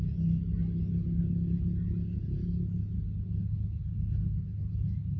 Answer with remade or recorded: recorded